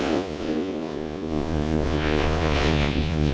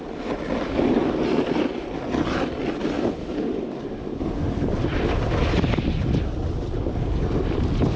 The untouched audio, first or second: second